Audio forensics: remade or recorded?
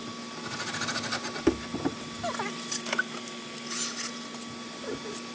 recorded